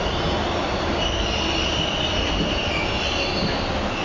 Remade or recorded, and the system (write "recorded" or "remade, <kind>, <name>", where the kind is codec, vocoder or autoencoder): recorded